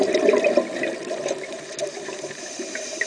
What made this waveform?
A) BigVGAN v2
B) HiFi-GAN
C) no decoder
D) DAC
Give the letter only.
A